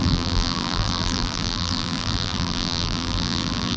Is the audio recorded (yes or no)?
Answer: no